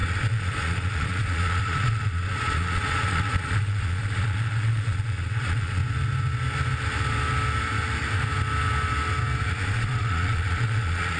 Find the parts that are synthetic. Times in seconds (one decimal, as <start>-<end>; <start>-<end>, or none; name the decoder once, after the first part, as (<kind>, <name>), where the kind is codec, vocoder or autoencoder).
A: 0.0-5.8 (vocoder, Vocos); 9.5-11.2